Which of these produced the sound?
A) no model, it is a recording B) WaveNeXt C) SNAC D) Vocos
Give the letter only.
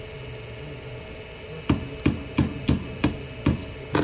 A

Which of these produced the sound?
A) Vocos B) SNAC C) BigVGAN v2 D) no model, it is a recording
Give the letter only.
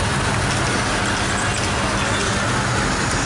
D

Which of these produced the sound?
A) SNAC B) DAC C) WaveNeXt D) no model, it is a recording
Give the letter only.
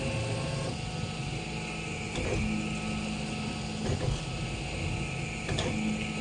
D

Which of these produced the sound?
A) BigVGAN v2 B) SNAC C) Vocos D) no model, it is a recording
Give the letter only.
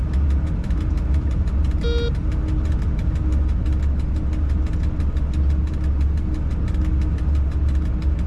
D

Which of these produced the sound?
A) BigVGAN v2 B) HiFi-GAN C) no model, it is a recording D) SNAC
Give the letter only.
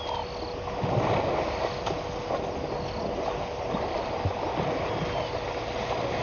C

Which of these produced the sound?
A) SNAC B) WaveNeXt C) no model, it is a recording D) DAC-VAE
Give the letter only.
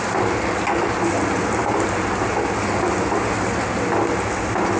C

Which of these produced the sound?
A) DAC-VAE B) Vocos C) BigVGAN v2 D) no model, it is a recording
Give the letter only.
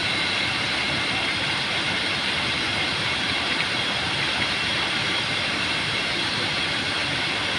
C